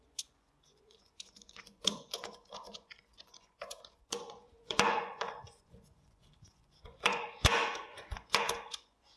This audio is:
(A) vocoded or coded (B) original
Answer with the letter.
A